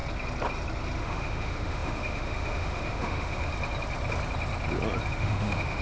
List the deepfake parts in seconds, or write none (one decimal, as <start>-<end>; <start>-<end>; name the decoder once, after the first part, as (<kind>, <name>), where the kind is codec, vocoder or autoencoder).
1.0-3.5 (autoencoder, DAC-VAE); 5.2-5.8